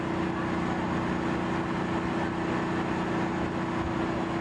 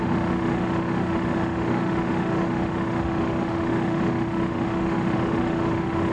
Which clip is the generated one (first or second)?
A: second